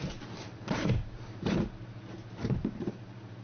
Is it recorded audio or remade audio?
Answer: remade